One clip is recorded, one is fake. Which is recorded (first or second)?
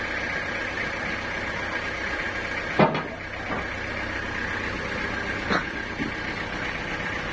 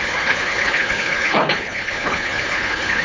first